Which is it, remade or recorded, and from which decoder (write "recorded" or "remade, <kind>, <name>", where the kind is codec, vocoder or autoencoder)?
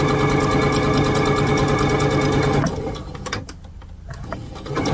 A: recorded